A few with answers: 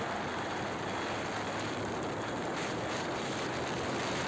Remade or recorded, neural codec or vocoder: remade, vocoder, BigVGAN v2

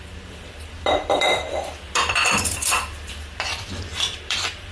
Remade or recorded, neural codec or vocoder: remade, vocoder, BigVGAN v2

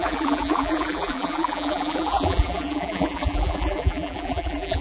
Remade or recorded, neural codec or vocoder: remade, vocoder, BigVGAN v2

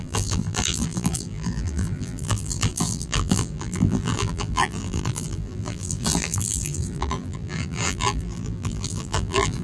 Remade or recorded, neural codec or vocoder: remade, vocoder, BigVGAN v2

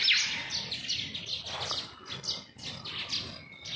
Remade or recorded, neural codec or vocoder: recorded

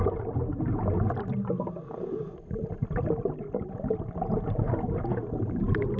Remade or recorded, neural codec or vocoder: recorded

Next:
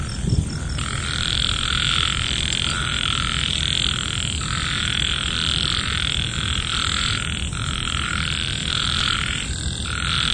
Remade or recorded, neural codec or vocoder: recorded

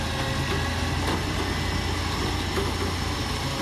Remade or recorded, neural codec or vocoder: recorded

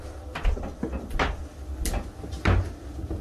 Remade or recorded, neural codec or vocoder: recorded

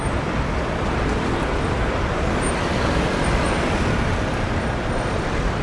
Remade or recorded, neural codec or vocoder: remade, vocoder, BigVGAN v2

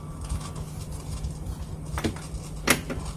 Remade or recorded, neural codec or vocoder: recorded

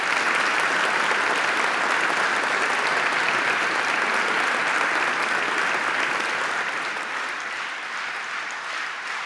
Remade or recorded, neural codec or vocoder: recorded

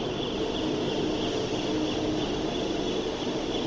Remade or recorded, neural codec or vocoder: recorded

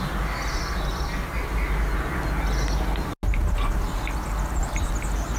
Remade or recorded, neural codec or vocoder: recorded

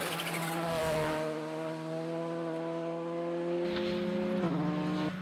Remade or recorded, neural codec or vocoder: recorded